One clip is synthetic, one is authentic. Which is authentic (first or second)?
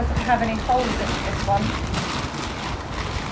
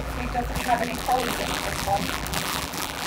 first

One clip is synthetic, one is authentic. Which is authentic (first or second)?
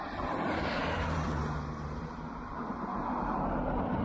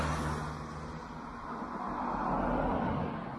second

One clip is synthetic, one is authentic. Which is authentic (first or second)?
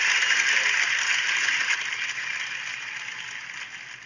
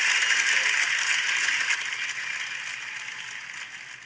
second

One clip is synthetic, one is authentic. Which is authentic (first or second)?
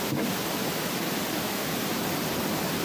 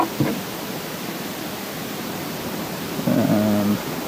first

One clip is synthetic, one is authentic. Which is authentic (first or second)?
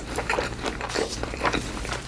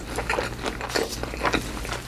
second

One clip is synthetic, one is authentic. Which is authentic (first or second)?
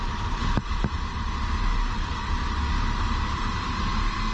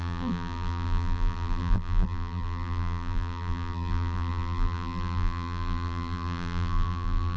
first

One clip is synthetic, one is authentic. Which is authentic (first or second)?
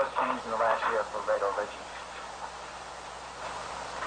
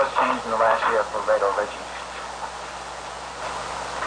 second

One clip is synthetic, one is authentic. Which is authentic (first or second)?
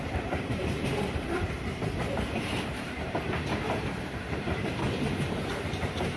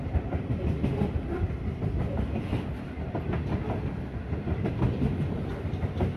second